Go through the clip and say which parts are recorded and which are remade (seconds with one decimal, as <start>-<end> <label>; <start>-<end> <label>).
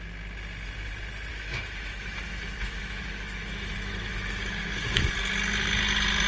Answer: 0.0-1.3 recorded; 1.3-5.1 remade; 5.1-6.3 recorded